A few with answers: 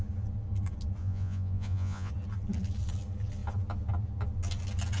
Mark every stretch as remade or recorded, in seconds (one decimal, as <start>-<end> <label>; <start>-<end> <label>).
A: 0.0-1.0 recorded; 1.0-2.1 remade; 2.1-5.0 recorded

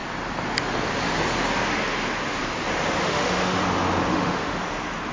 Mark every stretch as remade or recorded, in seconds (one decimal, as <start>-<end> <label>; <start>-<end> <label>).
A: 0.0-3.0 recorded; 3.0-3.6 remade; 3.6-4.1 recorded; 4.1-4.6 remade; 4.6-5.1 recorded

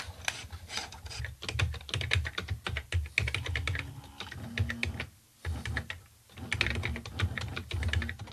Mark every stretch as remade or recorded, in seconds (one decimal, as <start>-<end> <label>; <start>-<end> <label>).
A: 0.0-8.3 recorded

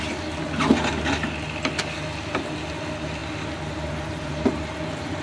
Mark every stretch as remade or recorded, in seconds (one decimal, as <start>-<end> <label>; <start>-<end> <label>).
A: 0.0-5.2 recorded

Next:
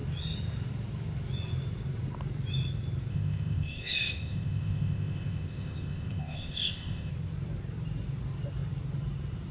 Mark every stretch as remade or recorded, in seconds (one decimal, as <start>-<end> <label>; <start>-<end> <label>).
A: 0.0-3.1 recorded; 3.1-7.1 remade; 7.1-9.5 recorded